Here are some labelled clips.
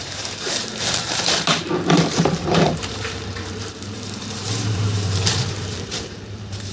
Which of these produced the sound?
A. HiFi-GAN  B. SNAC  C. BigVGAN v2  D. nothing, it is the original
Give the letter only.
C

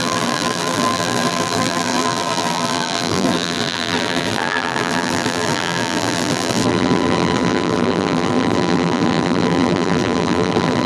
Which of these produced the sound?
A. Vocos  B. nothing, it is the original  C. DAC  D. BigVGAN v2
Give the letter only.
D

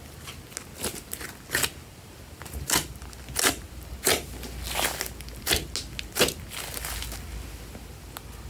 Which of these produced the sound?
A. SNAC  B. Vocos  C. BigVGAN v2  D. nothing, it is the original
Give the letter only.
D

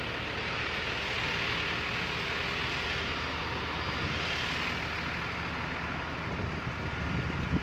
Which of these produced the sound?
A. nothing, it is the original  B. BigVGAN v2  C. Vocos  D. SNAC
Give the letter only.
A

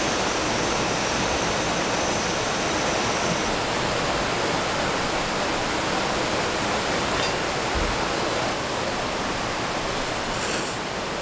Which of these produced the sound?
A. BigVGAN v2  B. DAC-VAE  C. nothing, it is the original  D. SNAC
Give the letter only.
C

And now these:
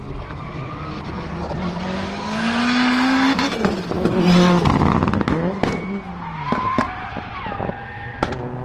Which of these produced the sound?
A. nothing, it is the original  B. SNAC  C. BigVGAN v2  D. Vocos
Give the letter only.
A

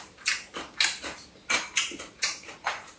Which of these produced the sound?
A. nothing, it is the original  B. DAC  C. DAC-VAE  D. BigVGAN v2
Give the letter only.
D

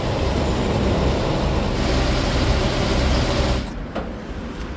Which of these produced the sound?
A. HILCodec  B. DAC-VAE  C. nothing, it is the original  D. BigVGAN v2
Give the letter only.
D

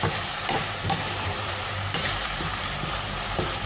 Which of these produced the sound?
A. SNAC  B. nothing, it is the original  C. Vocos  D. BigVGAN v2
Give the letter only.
D